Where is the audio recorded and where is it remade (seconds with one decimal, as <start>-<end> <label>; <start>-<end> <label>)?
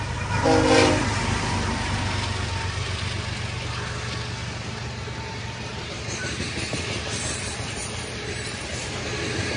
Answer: 0.0-4.4 recorded; 4.4-8.9 remade; 8.9-9.6 recorded